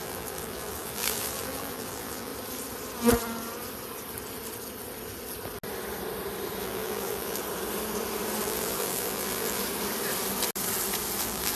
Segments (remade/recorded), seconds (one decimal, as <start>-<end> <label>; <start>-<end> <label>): 0.0-2.3 remade; 2.3-6.6 recorded; 6.6-7.4 remade; 7.4-8.4 recorded; 8.4-9.6 remade; 9.6-11.2 recorded; 11.2-11.6 remade